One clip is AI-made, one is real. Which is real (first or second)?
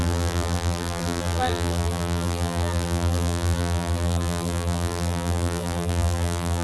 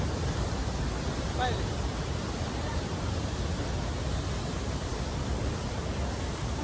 second